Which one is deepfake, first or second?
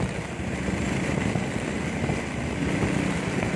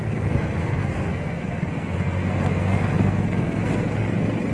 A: second